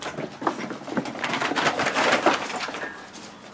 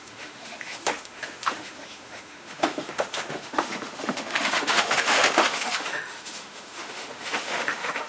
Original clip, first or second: first